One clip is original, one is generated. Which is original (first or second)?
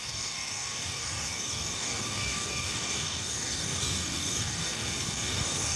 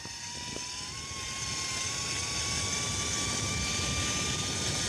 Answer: second